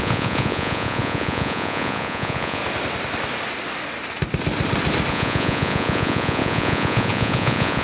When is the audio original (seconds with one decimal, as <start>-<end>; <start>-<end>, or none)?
2.6-5.1